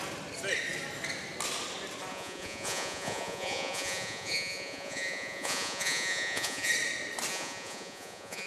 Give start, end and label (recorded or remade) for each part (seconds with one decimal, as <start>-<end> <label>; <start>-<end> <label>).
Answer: 0.0-2.1 recorded; 2.1-6.7 remade; 6.7-7.3 recorded; 7.3-8.5 remade